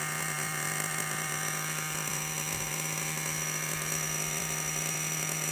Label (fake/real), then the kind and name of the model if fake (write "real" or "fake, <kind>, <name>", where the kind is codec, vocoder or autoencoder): fake, vocoder, BigVGAN v2